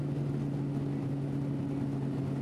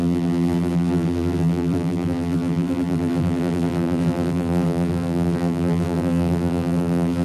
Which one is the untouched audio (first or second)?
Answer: first